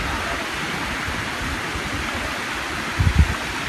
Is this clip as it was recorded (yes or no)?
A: yes